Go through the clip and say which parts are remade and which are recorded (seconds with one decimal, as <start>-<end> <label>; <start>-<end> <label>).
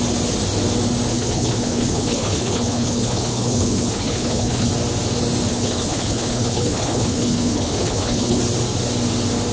0.0-1.1 recorded; 1.1-4.7 remade; 4.7-5.5 recorded; 5.5-8.4 remade; 8.4-9.5 recorded